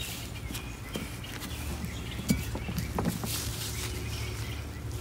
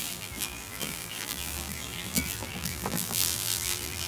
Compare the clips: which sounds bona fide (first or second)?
first